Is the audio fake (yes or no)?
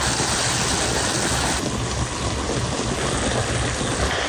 no